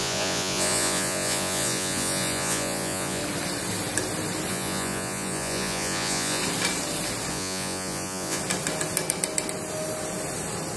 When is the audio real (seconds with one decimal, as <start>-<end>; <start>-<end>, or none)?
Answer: 3.2-4.5; 6.4-7.3; 8.4-10.8